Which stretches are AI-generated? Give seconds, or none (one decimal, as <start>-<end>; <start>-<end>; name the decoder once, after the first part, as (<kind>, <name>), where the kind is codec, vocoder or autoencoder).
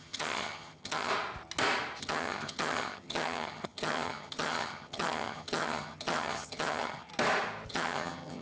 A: 0.0-1.1 (vocoder, HiFi-GAN); 2.0-7.1; 7.7-8.4